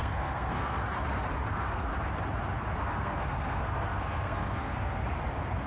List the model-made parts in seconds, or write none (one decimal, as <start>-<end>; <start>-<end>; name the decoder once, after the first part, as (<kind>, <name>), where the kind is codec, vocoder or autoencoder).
0.0-0.8 (codec, SNAC); 1.5-1.9; 2.8-5.0